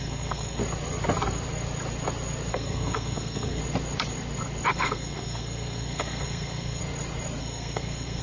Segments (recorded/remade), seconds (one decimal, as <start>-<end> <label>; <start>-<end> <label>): 0.0-0.6 remade; 0.6-2.5 recorded; 2.5-3.6 remade; 3.6-4.7 recorded; 4.7-6.8 remade; 6.8-7.4 recorded; 7.4-8.2 remade